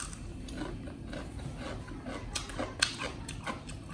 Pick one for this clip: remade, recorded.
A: recorded